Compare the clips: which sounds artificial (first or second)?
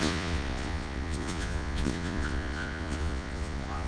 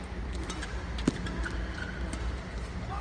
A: first